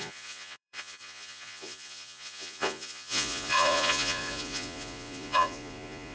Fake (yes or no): yes